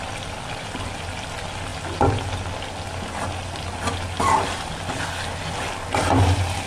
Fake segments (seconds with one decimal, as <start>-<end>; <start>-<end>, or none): none